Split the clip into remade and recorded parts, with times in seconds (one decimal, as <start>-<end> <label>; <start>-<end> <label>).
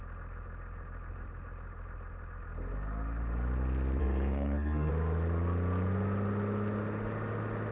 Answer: 0.0-4.0 recorded; 4.0-4.9 remade; 4.9-7.7 recorded